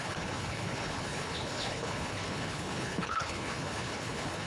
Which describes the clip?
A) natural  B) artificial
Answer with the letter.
B